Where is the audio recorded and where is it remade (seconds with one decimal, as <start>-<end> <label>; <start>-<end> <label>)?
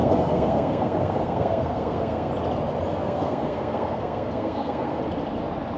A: 0.0-2.3 remade; 2.3-2.9 recorded; 2.9-5.0 remade; 5.0-5.8 recorded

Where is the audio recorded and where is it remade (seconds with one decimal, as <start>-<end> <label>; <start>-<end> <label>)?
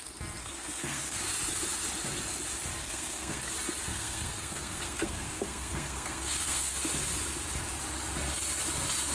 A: 0.0-0.4 recorded; 0.4-1.2 remade; 1.2-2.8 recorded; 2.8-3.4 remade; 3.4-3.9 recorded; 3.9-6.7 remade; 6.7-9.1 recorded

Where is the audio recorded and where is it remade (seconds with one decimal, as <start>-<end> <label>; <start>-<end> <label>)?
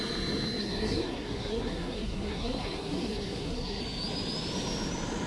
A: 0.0-0.6 recorded; 0.6-3.8 remade; 3.8-5.3 recorded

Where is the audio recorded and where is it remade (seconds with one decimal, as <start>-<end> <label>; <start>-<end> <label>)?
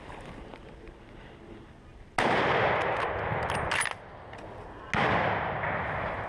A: 0.0-6.3 recorded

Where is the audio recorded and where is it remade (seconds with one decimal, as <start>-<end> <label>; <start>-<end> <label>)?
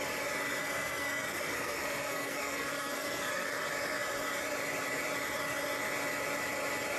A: 0.0-0.6 recorded; 0.6-3.6 remade; 3.6-7.0 recorded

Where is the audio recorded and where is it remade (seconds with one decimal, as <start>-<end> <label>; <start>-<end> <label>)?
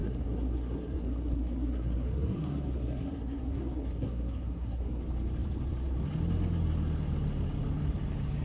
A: 0.0-5.0 remade; 5.0-8.4 recorded